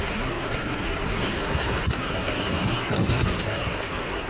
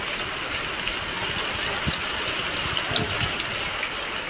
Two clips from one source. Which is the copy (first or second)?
first